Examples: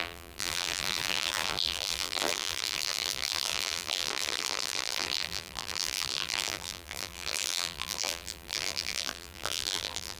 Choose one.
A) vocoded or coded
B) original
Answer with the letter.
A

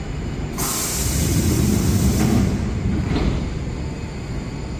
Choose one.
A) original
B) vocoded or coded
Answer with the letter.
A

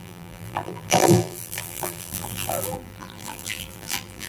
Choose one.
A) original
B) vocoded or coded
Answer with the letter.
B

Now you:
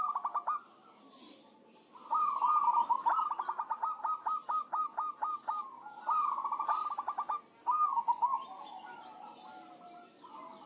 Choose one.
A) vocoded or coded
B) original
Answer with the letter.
B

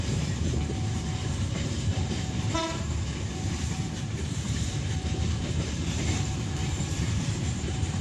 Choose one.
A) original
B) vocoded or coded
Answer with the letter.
B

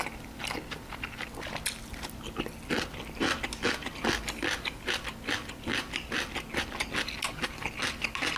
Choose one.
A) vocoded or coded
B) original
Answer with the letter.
B